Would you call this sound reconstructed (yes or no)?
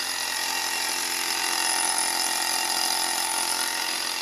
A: no